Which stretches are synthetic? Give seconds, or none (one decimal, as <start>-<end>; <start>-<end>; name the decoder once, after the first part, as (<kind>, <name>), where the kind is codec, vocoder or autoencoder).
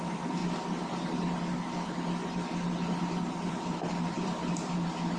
0.0-0.4 (vocoder, BigVGAN v2); 3.5-5.2